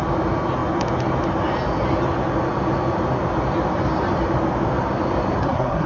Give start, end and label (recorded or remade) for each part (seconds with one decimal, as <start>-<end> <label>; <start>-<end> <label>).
0.0-5.4 recorded; 5.4-5.9 remade